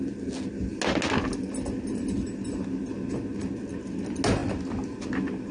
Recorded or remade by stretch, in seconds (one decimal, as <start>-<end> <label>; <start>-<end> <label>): 0.0-5.5 recorded